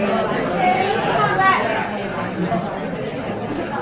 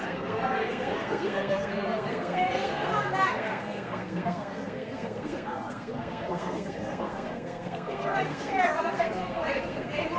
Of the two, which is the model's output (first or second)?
second